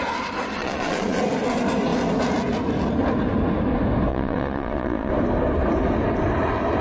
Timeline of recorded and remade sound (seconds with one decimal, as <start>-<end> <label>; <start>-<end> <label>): 0.0-0.6 recorded; 0.6-1.2 remade; 1.2-4.1 recorded; 4.1-5.1 remade; 5.1-6.8 recorded